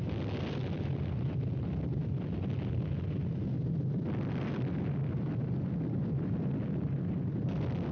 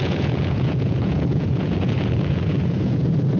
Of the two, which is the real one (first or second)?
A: first